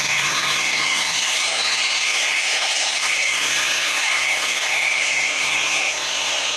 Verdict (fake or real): fake